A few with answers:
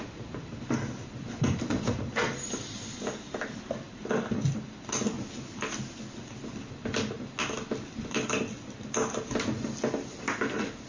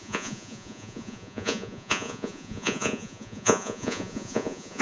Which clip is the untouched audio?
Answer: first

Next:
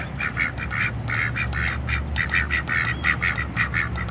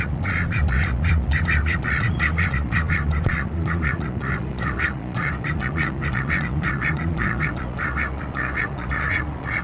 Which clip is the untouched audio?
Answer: first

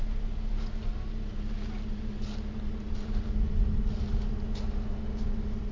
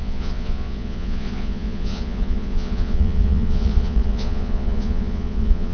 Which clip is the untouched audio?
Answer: first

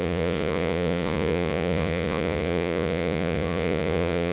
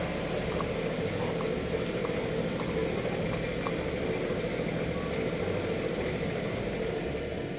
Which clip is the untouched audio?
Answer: second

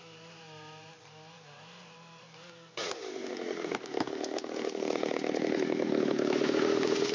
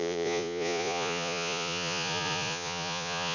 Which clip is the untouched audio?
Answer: first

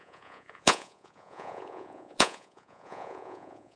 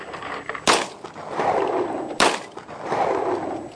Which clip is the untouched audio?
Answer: second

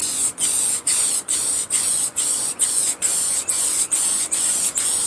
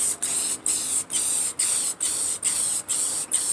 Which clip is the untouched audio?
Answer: second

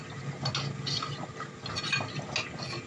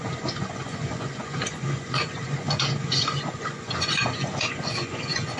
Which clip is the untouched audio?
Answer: first